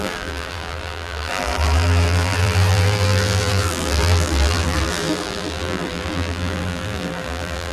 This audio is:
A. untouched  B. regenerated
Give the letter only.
B